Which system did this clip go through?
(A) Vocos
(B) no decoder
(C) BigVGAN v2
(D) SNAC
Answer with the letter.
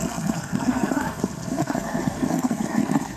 D